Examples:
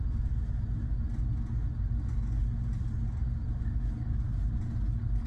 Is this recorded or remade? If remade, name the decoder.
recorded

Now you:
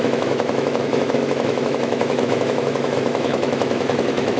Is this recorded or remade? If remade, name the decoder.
remade, autoencoder, DAC-VAE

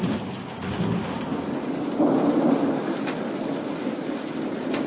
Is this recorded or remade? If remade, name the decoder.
recorded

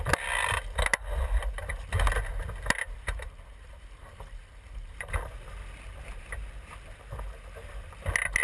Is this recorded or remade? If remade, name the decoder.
recorded